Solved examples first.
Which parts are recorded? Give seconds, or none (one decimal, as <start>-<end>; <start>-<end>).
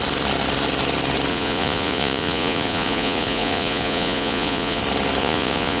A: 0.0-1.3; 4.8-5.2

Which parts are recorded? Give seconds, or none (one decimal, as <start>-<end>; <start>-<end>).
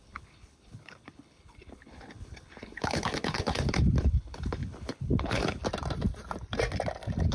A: 5.6-7.3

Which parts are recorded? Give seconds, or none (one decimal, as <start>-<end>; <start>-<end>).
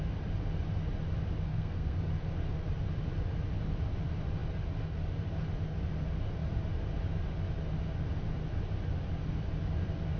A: 0.0-1.5; 2.0-10.2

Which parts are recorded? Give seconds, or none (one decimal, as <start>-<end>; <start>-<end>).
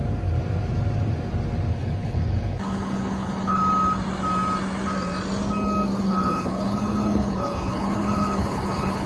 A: 0.0-1.7; 3.6-6.0